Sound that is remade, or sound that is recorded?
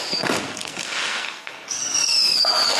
remade